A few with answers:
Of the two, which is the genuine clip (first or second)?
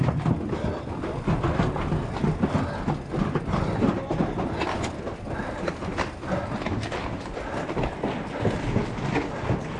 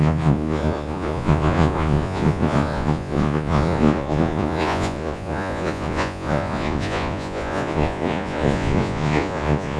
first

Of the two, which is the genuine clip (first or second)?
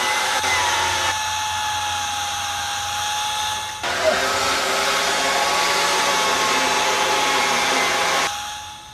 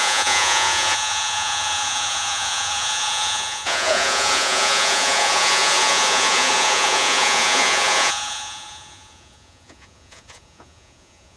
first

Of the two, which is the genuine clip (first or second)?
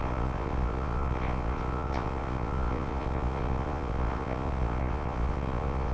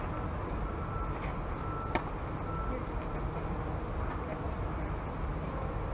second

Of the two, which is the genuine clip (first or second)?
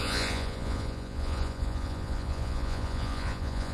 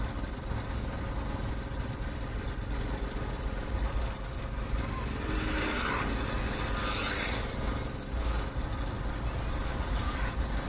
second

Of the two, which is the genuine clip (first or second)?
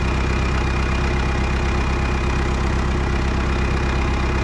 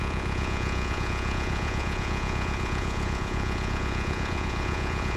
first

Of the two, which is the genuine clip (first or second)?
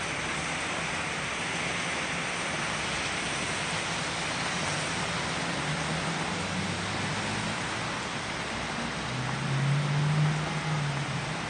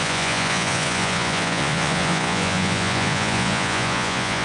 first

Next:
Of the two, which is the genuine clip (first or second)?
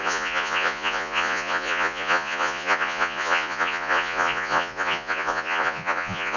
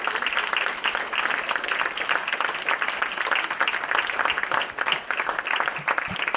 second